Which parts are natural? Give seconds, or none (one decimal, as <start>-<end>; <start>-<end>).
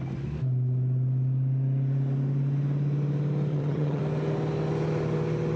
0.0-3.5; 4.0-5.6